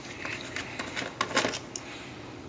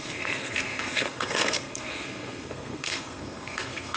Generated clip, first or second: second